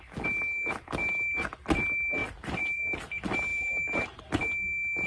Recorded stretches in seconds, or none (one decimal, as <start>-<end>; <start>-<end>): 0.0-2.2; 2.8-3.5; 4.2-5.1

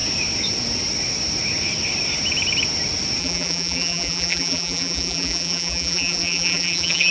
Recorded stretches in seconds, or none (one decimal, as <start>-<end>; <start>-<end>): 0.0-3.2